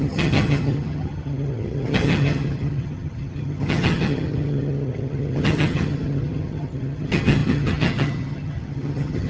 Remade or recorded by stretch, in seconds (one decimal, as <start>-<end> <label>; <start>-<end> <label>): 0.0-9.3 remade

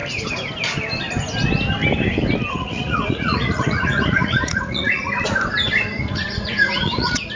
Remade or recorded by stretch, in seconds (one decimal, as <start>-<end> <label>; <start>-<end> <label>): 0.0-2.5 recorded; 2.5-5.1 remade; 5.1-6.0 recorded; 6.0-7.4 remade

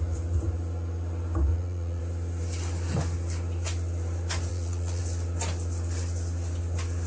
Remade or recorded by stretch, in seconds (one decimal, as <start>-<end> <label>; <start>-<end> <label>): 0.0-1.5 recorded; 1.5-2.0 remade; 2.0-4.5 recorded; 4.5-5.0 remade; 5.0-7.1 recorded

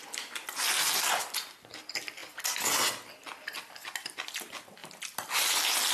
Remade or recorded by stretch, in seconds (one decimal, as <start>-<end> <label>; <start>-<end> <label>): 0.0-5.9 recorded

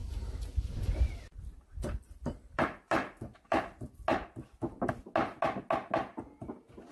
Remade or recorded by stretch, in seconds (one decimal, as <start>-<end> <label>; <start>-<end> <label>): 0.0-3.6 remade; 3.6-4.1 recorded; 4.1-4.9 remade; 4.9-6.9 recorded

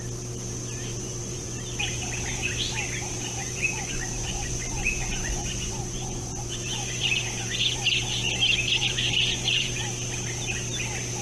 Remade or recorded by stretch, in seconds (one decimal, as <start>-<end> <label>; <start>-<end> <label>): 0.0-0.9 recorded; 0.9-1.6 remade; 1.6-3.4 recorded; 3.4-7.8 remade; 7.8-8.8 recorded; 8.8-9.7 remade; 9.7-11.2 recorded